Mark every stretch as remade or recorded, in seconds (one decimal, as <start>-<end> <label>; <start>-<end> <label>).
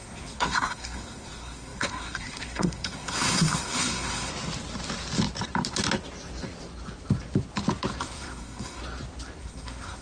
0.0-4.3 remade; 4.3-8.0 recorded; 8.0-8.8 remade; 8.8-9.4 recorded; 9.4-10.0 remade